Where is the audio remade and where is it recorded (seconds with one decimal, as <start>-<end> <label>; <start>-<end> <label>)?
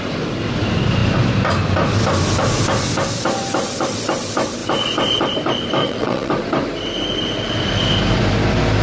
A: 0.0-5.8 recorded; 5.8-6.3 remade; 6.3-8.8 recorded